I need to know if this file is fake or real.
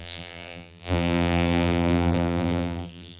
fake